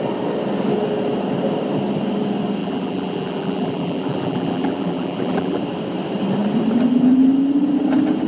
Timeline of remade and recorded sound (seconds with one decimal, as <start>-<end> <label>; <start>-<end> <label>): 0.0-2.6 recorded; 2.6-5.6 remade; 5.6-8.3 recorded